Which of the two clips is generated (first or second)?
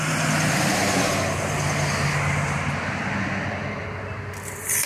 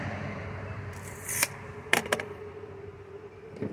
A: second